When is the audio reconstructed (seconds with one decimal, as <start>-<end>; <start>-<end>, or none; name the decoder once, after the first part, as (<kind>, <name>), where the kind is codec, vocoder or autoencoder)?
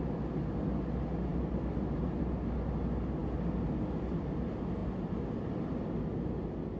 none